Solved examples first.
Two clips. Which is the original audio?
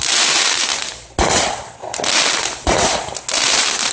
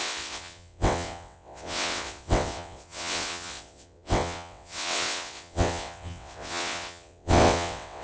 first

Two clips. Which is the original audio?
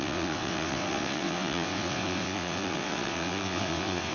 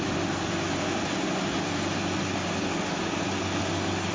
second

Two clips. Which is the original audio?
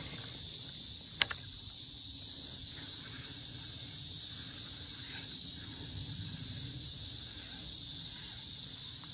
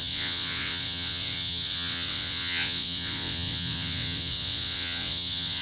first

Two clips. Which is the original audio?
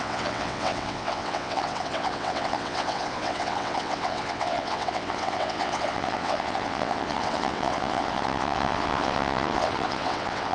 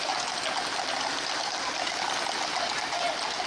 second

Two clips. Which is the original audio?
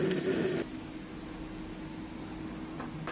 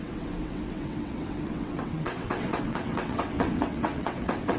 first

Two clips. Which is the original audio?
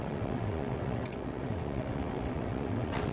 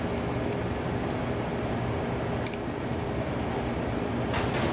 second